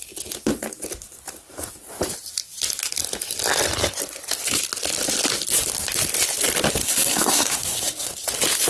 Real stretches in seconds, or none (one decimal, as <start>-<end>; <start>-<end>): 0.0-6.8; 8.1-8.7